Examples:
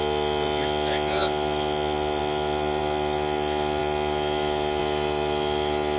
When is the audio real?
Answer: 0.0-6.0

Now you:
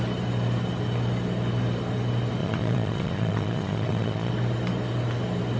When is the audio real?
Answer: 0.0-2.4; 4.3-5.6

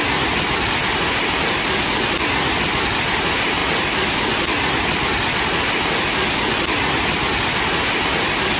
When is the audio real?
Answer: 0.0-8.6

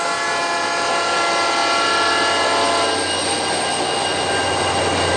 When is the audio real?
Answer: 0.0-5.2

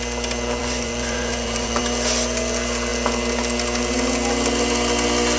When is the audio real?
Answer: 0.0-0.6; 1.8-5.4